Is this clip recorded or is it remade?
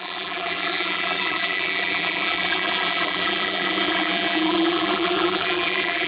remade